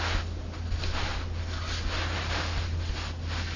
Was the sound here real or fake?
real